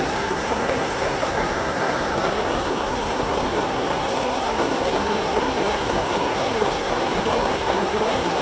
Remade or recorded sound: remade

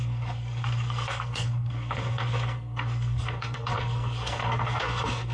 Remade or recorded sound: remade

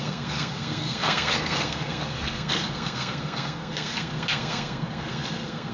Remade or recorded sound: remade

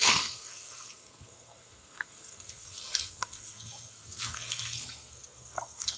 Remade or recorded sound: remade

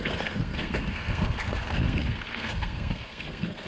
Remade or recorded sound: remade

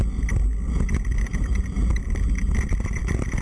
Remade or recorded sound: recorded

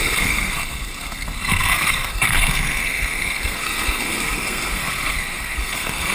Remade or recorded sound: remade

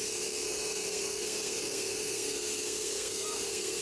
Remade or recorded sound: remade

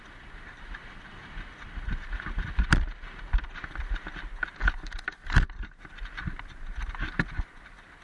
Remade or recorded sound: recorded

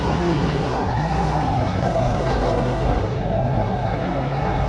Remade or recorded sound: remade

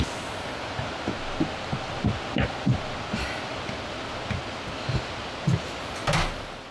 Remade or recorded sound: recorded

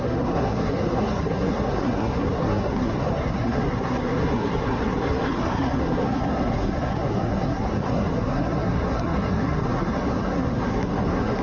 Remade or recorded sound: remade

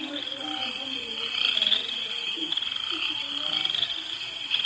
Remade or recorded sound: recorded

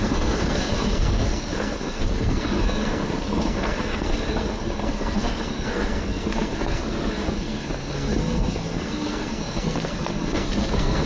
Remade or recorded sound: remade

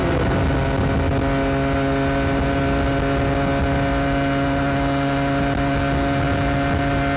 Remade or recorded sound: recorded